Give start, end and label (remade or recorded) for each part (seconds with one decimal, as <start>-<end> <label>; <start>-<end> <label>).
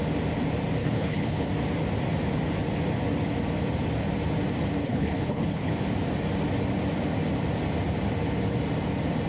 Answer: 0.0-0.8 recorded; 0.8-1.5 remade; 1.5-4.8 recorded; 4.8-5.7 remade; 5.7-9.3 recorded